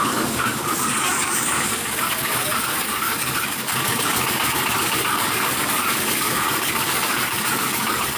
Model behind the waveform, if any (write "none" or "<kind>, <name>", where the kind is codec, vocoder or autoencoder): codec, DAC